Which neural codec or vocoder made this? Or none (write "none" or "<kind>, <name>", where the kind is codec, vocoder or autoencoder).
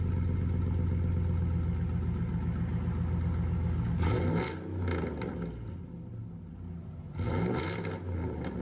none